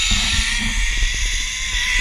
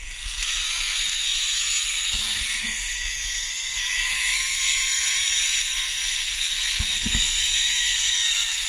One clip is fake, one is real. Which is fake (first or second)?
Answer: second